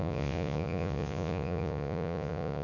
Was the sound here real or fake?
fake